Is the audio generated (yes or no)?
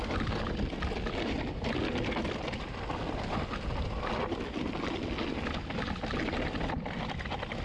no